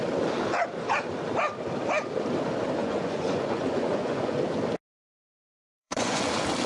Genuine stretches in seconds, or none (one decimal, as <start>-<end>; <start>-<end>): 0.0-2.8; 4.4-4.9; 6.3-6.7